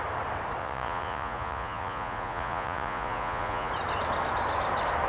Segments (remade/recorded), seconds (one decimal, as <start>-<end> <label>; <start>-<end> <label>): 0.0-0.6 recorded; 0.6-3.7 remade; 3.7-5.1 recorded